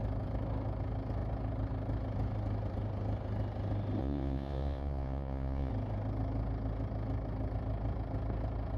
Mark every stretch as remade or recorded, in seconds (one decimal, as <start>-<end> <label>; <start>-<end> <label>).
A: 0.0-4.0 recorded; 4.0-5.7 remade; 5.7-8.8 recorded